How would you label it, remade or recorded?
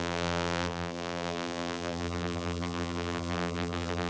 remade